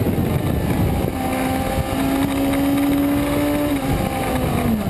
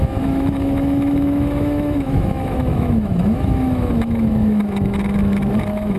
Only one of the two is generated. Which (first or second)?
second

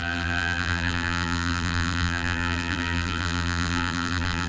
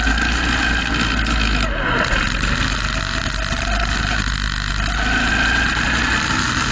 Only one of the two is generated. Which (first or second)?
first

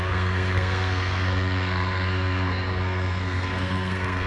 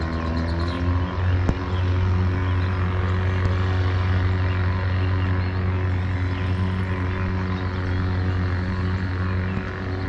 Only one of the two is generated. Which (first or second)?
first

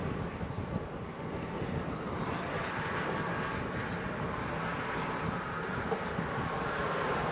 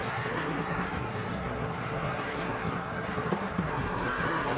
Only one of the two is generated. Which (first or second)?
second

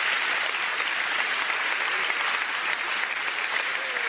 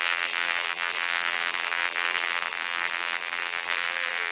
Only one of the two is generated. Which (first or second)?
second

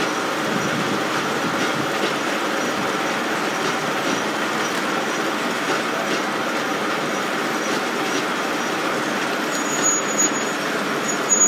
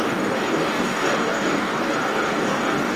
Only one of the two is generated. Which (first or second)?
second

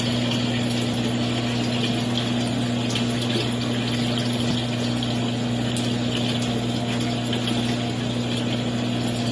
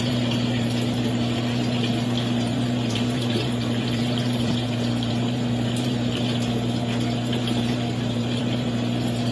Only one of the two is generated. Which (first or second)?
second